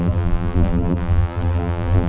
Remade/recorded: remade